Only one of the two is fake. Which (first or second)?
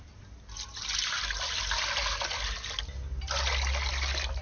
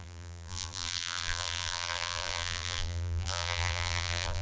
second